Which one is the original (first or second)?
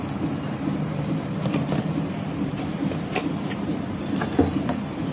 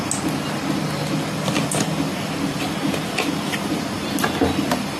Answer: second